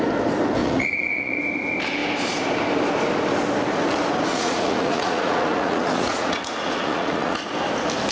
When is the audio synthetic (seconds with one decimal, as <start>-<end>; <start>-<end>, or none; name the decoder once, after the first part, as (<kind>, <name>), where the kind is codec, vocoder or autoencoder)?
0.6-1.4 (vocoder, Vocos); 4.3-7.4